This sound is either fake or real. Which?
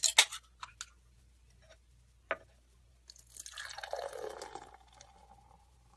real